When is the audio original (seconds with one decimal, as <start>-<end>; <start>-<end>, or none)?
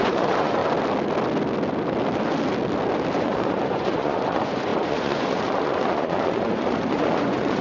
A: 0.6-3.2